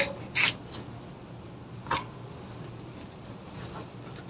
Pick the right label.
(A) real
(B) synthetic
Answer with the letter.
A